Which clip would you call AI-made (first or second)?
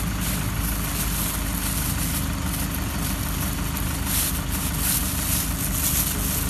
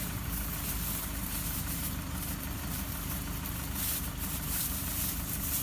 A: second